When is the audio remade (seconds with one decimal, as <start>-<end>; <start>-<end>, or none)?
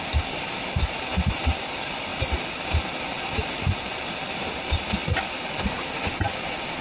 0.0-2.1; 3.8-6.8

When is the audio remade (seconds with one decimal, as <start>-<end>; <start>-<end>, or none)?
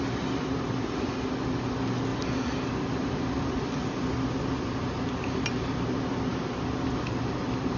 none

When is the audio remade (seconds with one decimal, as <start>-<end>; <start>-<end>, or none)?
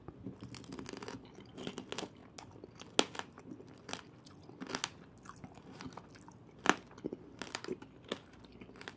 none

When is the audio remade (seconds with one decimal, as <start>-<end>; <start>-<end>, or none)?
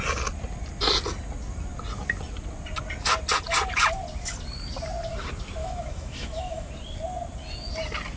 5.6-6.7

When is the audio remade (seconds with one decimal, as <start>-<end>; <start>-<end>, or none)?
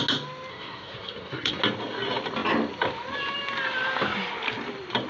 0.5-1.6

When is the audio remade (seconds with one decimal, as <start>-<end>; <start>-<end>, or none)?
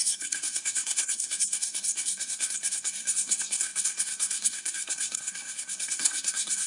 0.0-6.7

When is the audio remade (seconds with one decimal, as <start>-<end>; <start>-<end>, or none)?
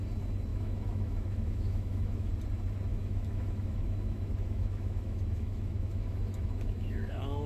0.5-2.3; 2.9-7.5